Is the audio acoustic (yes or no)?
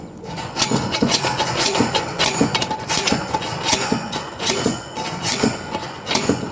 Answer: no